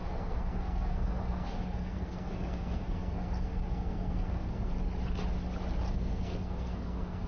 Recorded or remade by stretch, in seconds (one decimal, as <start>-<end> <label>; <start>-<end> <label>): 0.0-4.7 remade; 4.7-5.9 recorded; 5.9-7.3 remade

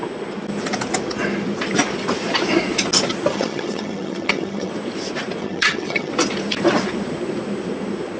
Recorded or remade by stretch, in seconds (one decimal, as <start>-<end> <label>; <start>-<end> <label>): 0.0-3.3 recorded; 3.3-4.7 remade; 4.7-5.4 recorded; 5.4-6.1 remade; 6.1-8.2 recorded